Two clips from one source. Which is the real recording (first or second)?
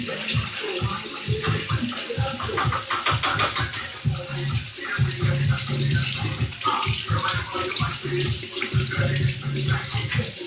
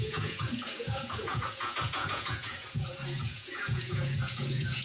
first